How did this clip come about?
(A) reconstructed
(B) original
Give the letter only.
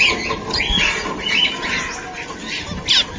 B